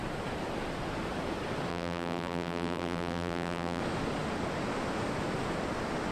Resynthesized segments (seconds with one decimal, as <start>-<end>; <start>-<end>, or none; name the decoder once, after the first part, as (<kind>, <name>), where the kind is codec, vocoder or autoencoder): 1.7-3.8 (vocoder, BigVGAN v2)